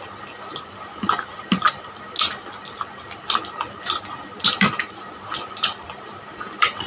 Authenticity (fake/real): real